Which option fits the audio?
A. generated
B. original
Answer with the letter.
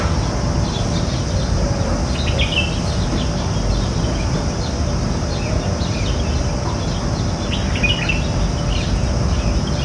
B